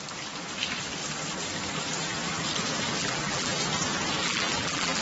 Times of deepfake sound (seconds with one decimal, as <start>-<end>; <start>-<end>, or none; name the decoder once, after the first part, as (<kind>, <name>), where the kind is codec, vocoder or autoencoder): 3.0-3.6 (vocoder, BigVGAN v2); 4.2-5.0